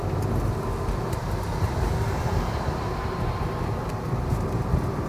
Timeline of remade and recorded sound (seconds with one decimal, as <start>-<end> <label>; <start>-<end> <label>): 0.0-1.2 recorded; 1.2-3.9 remade; 3.9-5.1 recorded